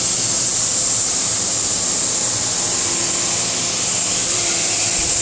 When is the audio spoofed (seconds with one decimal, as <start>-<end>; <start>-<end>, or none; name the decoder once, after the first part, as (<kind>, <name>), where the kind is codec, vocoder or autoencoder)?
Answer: 0.5-3.6 (vocoder, BigVGAN v2); 4.2-5.2